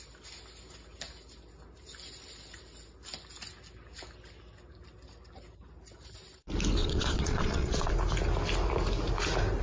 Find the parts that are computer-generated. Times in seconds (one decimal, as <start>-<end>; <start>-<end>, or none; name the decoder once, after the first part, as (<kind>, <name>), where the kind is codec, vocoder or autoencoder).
6.8-7.9 (vocoder, WaveNeXt)